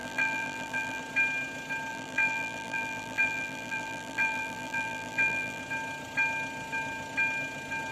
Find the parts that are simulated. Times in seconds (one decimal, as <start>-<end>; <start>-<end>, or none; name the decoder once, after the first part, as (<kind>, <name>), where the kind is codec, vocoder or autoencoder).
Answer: 0.0-1.0 (vocoder, BigVGAN v2); 1.9-5.6